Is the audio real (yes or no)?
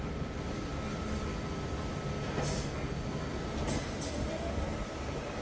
yes